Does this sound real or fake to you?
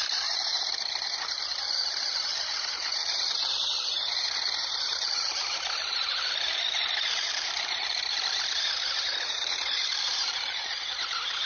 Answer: fake